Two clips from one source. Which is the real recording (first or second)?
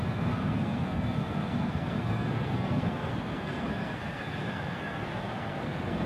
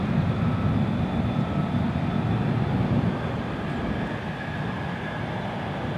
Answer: second